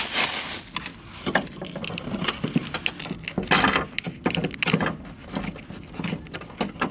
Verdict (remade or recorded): recorded